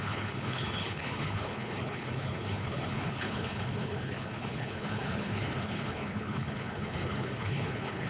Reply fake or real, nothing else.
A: fake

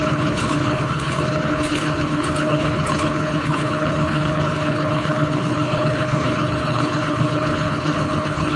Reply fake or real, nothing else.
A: fake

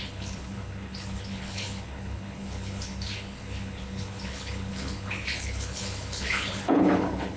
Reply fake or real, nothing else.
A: fake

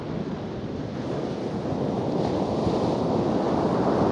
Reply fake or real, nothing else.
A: real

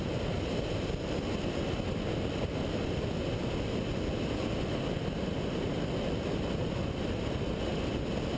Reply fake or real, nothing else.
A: real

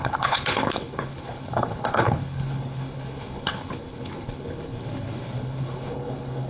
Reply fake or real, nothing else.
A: fake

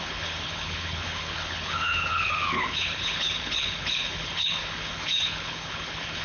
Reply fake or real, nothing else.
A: fake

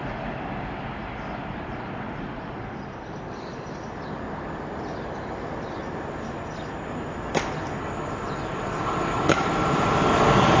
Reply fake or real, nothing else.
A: real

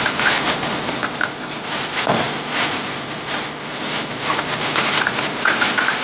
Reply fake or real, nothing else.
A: real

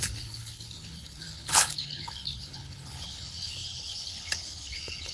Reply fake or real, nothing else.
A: fake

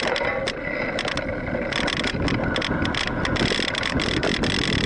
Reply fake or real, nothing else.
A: real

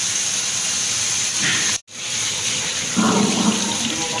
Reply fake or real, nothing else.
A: real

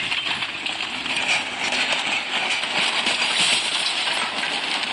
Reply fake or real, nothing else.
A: real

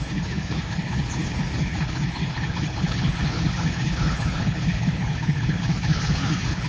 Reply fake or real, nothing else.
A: fake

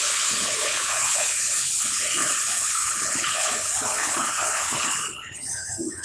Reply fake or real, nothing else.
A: fake